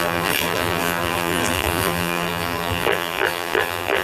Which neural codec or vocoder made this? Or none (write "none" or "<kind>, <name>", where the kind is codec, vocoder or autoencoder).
vocoder, BigVGAN v2